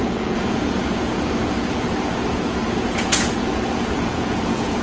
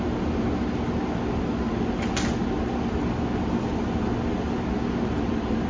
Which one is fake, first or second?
first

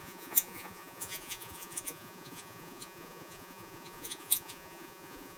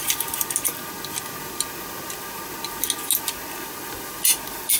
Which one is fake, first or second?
first